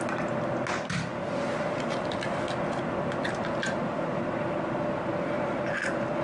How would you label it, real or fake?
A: real